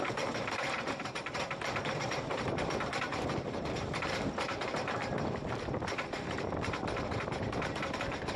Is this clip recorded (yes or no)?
no